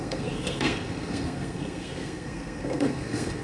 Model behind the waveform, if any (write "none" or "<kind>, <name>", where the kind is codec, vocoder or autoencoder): codec, SNAC